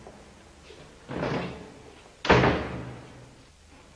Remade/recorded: recorded